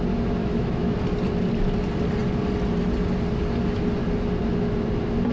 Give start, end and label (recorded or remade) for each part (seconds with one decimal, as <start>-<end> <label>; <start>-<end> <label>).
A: 0.0-0.4 recorded; 0.4-1.0 remade; 1.0-5.3 recorded